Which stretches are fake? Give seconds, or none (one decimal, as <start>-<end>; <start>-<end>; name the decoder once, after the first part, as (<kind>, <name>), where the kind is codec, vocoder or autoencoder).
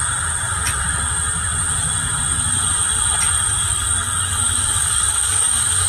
3.5-5.9 (codec, DAC)